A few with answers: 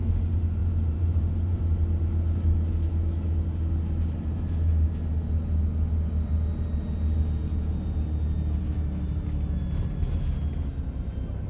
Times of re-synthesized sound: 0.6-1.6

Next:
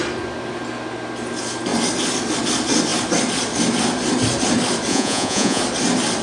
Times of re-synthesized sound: 4.9-5.6